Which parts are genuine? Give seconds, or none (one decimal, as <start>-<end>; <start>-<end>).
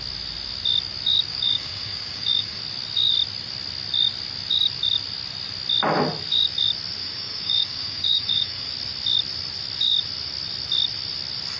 0.0-1.3; 2.6-7.0; 8.7-11.6